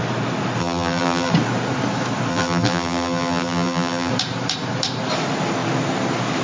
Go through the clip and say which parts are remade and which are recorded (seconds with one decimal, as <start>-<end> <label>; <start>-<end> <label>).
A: 0.0-0.6 recorded; 0.6-1.3 remade; 1.3-2.3 recorded; 2.3-4.1 remade; 4.1-6.4 recorded